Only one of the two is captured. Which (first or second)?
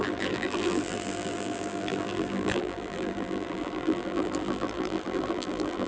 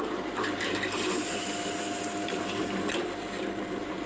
second